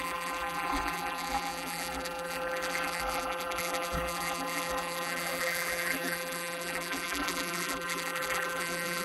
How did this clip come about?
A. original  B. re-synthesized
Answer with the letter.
B